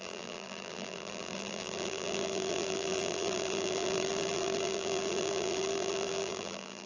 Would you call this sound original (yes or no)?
no